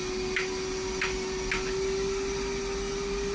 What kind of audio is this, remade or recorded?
remade